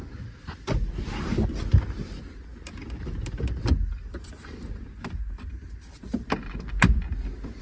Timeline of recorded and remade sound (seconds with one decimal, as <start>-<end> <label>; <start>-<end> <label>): 0.0-4.1 recorded; 4.1-6.5 remade; 6.5-7.6 recorded